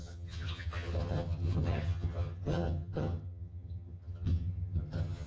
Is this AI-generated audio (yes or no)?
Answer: yes